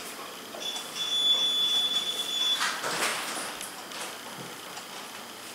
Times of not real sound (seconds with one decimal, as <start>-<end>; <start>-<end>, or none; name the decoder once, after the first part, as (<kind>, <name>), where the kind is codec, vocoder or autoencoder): none